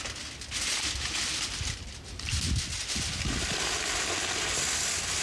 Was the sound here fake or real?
real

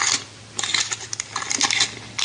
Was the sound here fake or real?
real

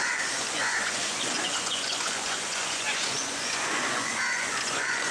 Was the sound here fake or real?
fake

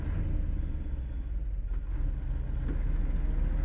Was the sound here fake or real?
real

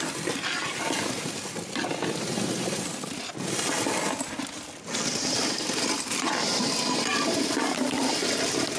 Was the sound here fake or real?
real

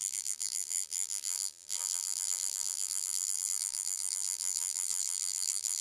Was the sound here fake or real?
fake